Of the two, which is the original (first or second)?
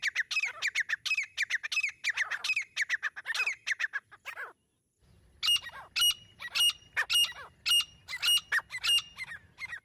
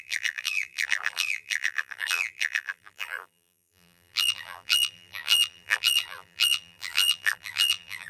first